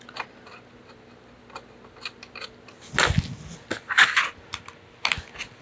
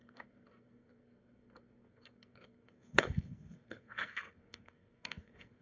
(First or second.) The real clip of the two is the first